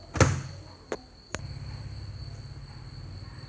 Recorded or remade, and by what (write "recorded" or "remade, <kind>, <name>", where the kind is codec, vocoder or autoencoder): recorded